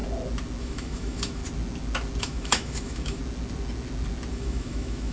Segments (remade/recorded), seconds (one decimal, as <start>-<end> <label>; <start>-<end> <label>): 0.0-0.6 recorded; 0.6-1.4 remade; 1.4-2.2 recorded; 2.2-3.2 remade; 3.2-4.3 recorded; 4.3-5.1 remade